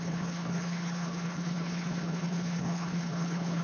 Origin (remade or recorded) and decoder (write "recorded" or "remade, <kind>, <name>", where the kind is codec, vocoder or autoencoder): remade, codec, HILCodec